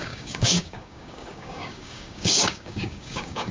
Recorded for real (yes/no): no